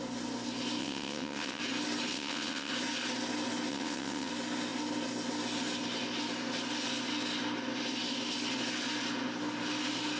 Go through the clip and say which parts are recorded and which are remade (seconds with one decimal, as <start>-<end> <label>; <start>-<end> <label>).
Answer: 0.0-0.8 recorded; 0.8-1.6 remade; 1.6-2.1 recorded; 2.1-2.7 remade; 2.7-3.7 recorded; 3.7-4.3 remade; 4.3-10.2 recorded